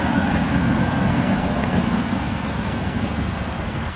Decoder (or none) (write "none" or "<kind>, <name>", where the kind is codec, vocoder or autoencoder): codec, SNAC